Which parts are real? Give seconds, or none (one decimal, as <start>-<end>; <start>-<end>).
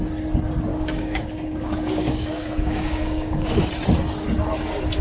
0.0-0.7; 3.7-5.0